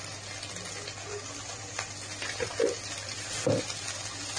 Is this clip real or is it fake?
real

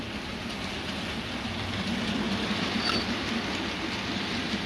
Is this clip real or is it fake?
real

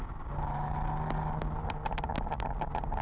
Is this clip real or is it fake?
real